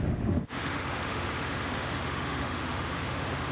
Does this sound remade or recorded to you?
remade